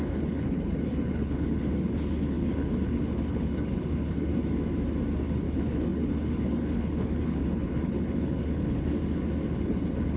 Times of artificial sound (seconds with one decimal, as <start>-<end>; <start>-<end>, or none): 0.0-4.3; 5.2-9.0; 9.6-10.2